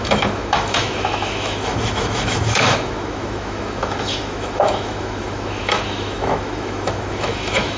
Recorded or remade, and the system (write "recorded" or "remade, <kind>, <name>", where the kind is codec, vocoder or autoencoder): remade, autoencoder, DAC-VAE